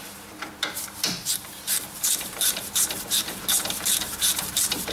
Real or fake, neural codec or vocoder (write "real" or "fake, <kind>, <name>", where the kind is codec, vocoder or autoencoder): fake, vocoder, BigVGAN v2